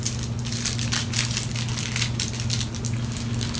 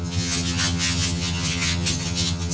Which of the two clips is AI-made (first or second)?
second